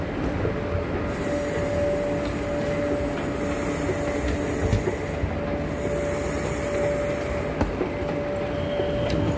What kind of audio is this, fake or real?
real